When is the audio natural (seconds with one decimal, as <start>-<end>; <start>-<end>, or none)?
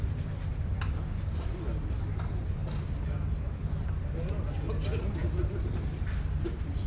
0.0-6.9